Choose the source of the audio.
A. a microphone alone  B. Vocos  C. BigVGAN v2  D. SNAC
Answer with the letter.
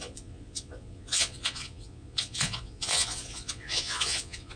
B